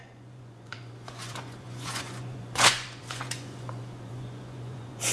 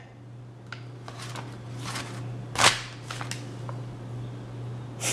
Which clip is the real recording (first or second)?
second